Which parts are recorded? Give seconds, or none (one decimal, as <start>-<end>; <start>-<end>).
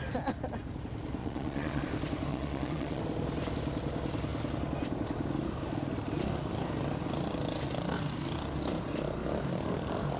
0.0-1.2; 1.8-2.3; 3.0-10.2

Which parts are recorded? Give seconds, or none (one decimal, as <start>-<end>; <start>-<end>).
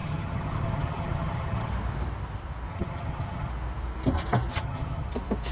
1.7-2.7; 3.5-4.5; 5.1-5.5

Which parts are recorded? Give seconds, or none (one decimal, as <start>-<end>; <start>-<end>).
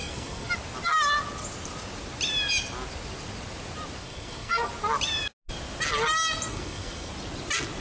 0.5-4.0; 4.7-6.5; 7.1-7.8